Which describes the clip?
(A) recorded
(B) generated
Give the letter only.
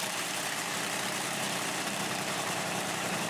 B